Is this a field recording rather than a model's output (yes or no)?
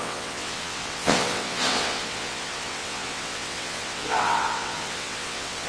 no